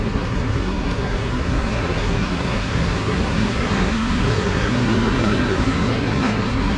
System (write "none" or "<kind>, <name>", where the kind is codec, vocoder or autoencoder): codec, SNAC